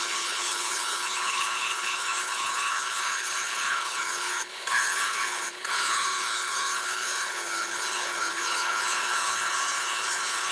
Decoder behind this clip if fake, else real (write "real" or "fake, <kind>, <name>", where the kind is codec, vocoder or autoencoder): fake, codec, HILCodec